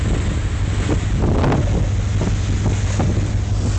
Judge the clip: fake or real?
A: real